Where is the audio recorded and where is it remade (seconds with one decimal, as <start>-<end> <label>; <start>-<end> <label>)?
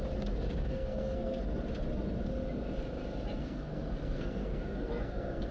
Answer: 0.0-0.6 recorded; 0.6-1.4 remade; 1.4-3.4 recorded; 3.4-5.5 remade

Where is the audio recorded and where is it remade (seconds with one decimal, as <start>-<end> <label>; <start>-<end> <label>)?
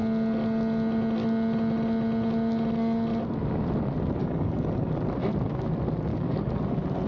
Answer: 0.0-4.2 recorded; 4.2-4.9 remade; 4.9-6.1 recorded; 6.1-6.6 remade; 6.6-7.1 recorded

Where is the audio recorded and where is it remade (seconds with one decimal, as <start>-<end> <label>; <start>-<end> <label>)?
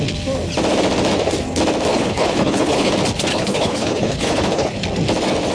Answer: 0.0-1.9 recorded; 1.9-2.9 remade; 2.9-3.3 recorded; 3.3-4.8 remade; 4.8-5.5 recorded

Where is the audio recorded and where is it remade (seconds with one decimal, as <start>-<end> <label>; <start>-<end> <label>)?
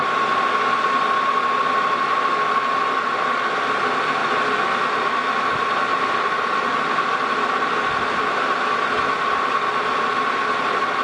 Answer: 0.0-11.0 recorded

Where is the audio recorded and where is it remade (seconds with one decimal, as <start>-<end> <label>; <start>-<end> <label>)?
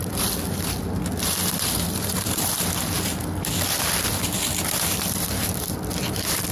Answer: 0.0-6.5 remade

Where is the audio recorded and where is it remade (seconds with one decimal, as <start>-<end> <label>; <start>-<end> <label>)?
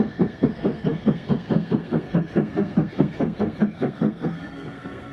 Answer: 0.0-5.1 remade